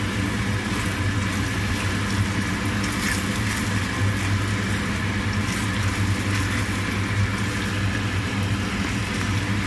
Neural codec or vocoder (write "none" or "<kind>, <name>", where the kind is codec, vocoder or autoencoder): none